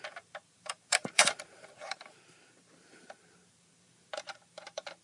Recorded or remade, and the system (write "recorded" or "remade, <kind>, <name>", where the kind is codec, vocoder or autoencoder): remade, vocoder, BigVGAN v2